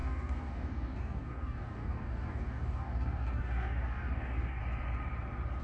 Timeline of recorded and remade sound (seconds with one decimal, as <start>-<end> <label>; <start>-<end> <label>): 0.0-4.6 remade; 4.6-5.6 recorded